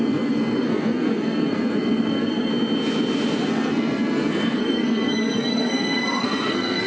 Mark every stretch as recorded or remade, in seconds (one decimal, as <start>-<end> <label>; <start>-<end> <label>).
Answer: 0.0-2.5 remade; 2.5-3.5 recorded; 3.5-6.9 remade